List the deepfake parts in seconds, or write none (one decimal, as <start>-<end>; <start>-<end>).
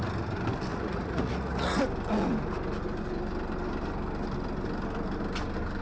0.7-1.8